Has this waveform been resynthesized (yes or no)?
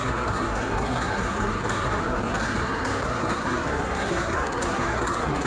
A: yes